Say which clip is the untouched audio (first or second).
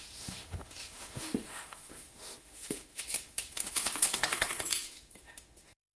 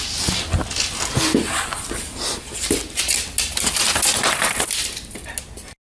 second